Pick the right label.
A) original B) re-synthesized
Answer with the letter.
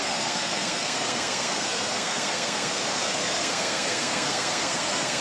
B